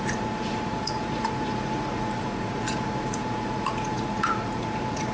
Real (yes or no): no